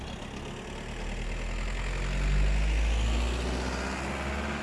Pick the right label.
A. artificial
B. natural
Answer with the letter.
B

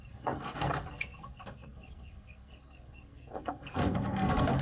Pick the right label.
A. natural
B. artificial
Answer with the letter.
B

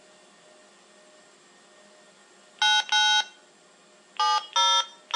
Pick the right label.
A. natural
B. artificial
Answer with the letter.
A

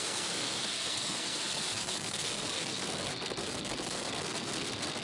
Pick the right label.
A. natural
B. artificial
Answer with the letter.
B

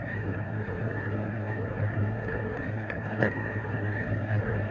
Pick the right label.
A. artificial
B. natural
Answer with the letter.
A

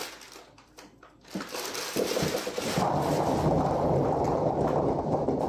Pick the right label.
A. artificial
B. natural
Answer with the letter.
B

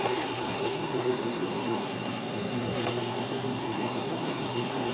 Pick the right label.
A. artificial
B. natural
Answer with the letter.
A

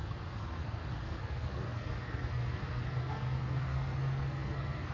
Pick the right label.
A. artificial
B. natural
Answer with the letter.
A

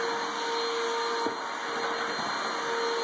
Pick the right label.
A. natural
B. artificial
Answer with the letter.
A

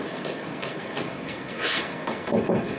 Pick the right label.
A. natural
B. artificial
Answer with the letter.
B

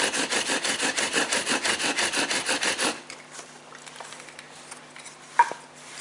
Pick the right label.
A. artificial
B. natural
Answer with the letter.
B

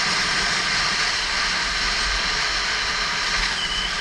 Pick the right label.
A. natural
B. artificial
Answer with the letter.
A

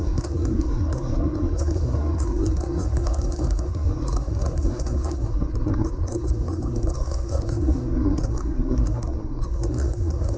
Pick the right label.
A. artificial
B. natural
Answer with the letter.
A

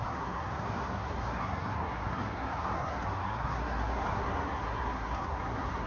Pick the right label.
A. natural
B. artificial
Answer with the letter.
B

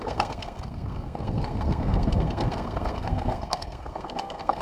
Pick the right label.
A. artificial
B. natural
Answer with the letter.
A